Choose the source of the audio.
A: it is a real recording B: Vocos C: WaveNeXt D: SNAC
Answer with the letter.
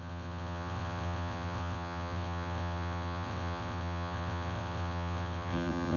C